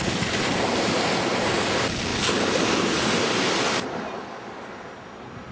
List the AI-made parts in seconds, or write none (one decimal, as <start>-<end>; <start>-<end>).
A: none